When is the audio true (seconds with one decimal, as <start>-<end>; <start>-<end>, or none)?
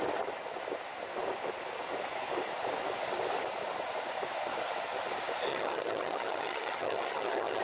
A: 0.0-5.5